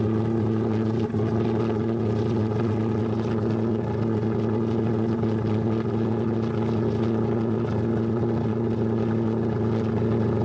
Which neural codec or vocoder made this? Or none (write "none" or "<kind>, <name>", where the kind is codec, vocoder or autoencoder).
none